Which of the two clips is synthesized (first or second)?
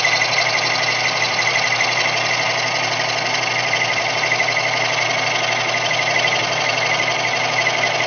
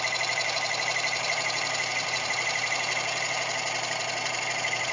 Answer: second